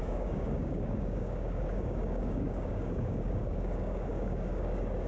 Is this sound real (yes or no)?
no